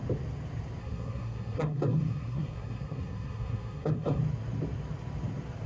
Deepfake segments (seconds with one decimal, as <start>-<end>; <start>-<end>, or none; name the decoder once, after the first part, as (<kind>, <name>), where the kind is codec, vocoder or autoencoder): 0.8-4.2 (codec, SNAC)